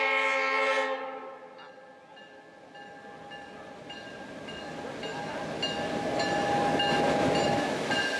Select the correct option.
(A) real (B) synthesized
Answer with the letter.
A